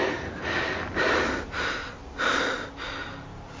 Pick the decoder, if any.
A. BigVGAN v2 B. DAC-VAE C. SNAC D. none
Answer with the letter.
D